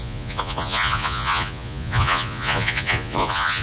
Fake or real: fake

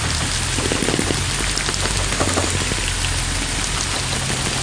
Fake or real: real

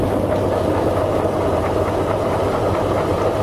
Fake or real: real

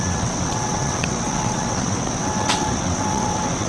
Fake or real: fake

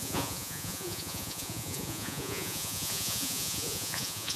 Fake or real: fake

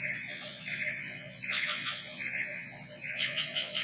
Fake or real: fake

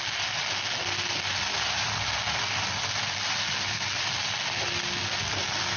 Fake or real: real